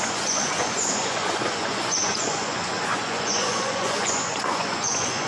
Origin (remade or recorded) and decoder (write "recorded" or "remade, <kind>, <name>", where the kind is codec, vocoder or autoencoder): remade, vocoder, Vocos